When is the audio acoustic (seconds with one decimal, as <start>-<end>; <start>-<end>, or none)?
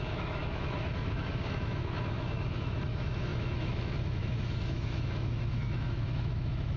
none